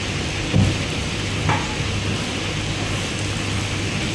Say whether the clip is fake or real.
real